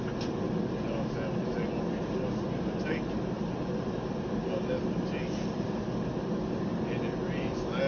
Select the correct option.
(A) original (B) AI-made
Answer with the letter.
A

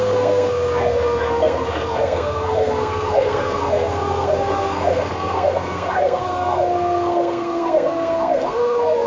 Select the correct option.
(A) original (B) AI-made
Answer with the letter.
B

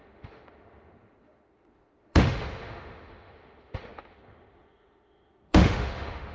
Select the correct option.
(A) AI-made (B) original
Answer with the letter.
A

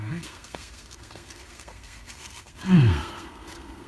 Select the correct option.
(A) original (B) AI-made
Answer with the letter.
B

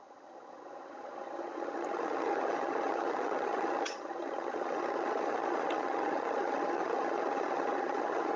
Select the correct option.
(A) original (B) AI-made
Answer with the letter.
B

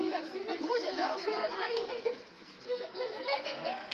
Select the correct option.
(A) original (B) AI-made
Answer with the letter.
B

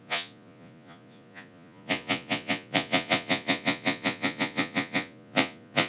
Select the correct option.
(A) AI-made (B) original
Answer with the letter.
A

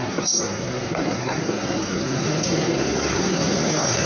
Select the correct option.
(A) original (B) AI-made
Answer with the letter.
B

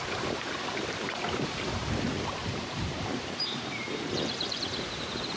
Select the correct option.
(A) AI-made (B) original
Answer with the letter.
A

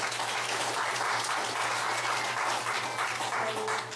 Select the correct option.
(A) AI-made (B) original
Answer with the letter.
B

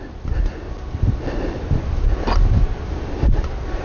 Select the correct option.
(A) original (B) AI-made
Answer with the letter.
A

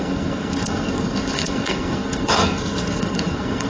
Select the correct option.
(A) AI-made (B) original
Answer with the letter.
A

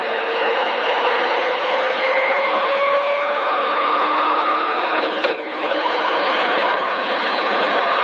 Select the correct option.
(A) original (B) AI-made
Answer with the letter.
B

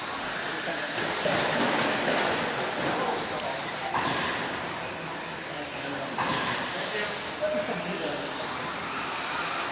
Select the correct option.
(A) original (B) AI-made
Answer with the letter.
A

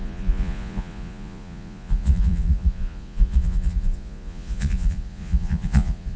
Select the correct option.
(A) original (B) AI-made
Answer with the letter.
B